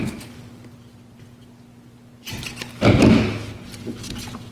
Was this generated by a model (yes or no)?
no